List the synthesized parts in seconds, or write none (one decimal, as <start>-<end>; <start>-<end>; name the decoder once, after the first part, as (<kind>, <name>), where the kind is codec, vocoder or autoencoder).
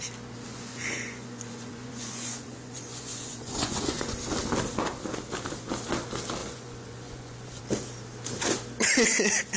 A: 0.5-4.1 (vocoder, Vocos); 6.4-7.6